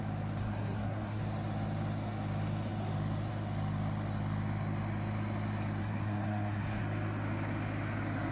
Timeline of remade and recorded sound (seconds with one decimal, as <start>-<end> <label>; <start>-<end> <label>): 0.0-0.4 recorded; 0.4-1.2 remade; 1.2-5.8 recorded; 5.8-6.8 remade; 6.8-8.3 recorded